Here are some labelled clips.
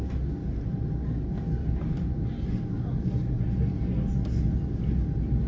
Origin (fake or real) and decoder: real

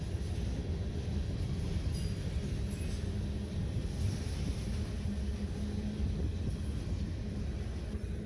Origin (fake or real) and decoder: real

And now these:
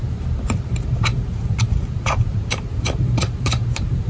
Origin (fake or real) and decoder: fake, vocoder, BigVGAN v2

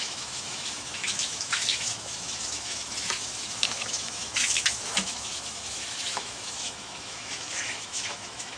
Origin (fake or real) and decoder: fake, autoencoder, DAC-VAE